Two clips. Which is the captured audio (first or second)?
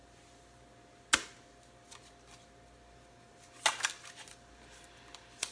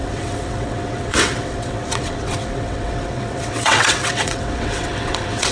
first